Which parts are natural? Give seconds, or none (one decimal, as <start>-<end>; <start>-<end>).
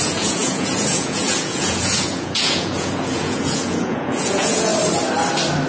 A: 4.7-5.7